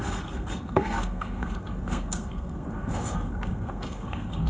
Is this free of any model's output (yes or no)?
no